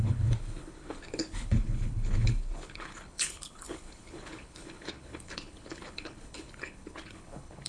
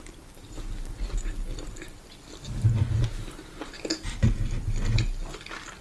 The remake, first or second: first